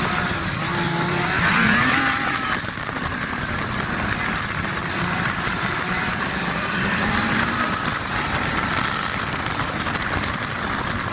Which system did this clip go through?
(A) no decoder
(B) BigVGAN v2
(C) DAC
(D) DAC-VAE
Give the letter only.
A